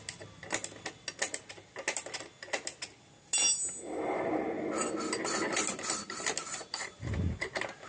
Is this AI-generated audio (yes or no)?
no